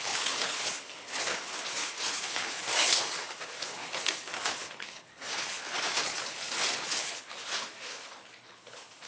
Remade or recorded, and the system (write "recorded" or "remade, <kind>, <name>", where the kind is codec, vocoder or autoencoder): remade, codec, HILCodec